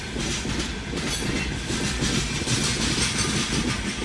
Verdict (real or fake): real